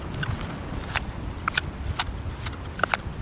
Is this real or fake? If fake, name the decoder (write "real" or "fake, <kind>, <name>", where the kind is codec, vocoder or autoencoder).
real